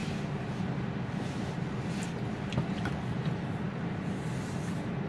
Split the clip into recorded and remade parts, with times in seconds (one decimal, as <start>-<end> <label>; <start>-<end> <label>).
0.0-5.1 recorded